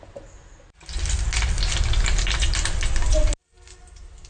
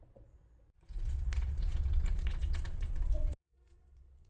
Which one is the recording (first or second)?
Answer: first